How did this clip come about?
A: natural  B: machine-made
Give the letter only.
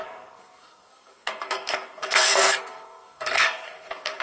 B